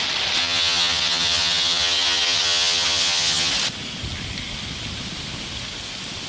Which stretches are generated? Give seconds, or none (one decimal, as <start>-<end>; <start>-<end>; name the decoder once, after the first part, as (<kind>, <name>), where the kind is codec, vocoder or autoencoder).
0.4-3.5 (vocoder, HiFi-GAN)